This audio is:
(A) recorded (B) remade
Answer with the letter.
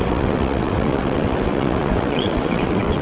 B